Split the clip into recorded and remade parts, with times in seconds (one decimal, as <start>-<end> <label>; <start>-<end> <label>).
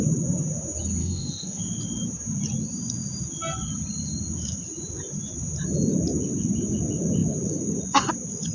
0.0-1.0 recorded; 1.0-1.6 remade; 1.6-8.5 recorded